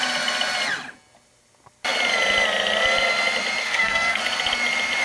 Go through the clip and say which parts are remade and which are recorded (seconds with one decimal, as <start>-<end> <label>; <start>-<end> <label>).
0.0-3.6 recorded; 3.6-4.2 remade; 4.2-5.0 recorded